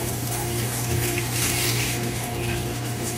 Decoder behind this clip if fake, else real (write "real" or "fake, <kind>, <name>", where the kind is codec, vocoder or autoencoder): fake, codec, DAC